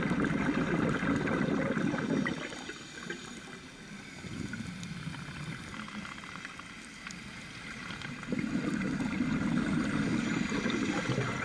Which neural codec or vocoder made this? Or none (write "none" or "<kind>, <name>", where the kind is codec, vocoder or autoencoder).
none